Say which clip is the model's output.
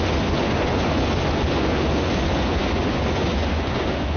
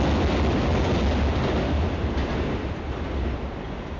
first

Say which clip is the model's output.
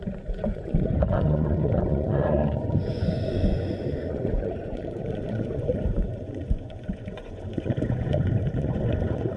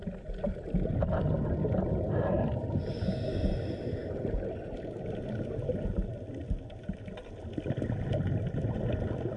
first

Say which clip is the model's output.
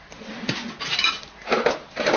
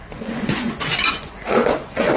second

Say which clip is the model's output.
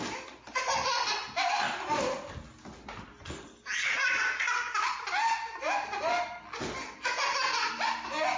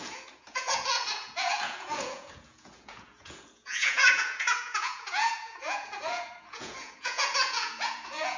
second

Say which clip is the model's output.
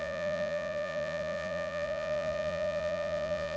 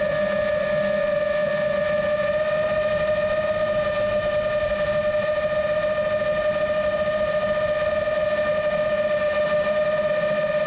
first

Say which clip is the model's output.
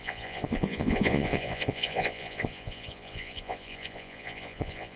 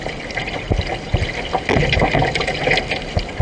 first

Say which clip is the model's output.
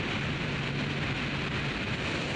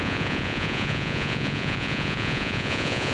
second